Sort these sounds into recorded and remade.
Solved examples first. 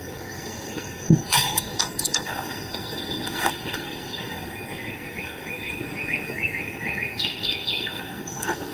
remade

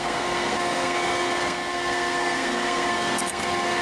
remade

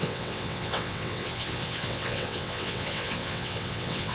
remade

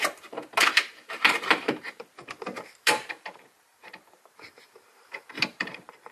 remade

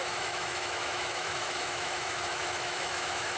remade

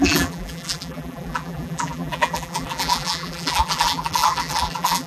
remade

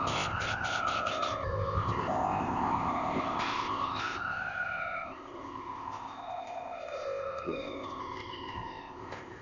remade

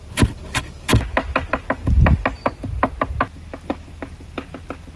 recorded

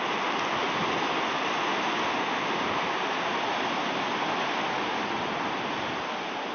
recorded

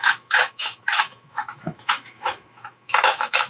remade